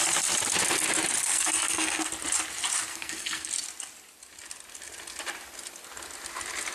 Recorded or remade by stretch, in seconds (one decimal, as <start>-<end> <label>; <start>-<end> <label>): 0.0-1.2 recorded; 1.2-2.1 remade; 2.1-2.9 recorded; 2.9-3.5 remade; 3.5-6.7 recorded